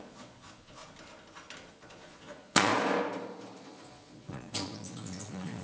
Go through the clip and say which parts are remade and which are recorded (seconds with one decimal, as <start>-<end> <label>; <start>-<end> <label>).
0.0-0.8 remade; 0.8-1.7 recorded; 1.7-2.7 remade; 2.7-3.6 recorded; 3.6-5.6 remade